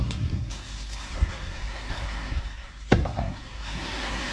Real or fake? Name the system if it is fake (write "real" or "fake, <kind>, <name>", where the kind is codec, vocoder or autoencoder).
fake, codec, SNAC